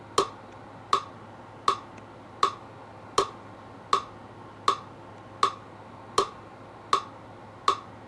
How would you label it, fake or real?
real